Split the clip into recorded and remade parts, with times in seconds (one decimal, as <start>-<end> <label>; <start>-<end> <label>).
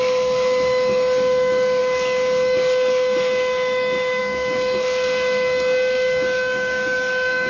0.0-7.5 remade